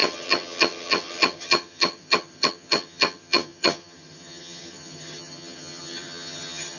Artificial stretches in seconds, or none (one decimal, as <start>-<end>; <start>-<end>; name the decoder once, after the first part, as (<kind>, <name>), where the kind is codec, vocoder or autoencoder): 0.0-6.8 (vocoder, HiFi-GAN)